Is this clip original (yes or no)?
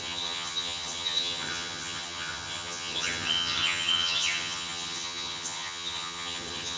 no